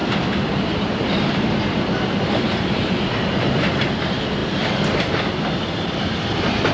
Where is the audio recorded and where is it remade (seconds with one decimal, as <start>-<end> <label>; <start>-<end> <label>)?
0.0-6.7 remade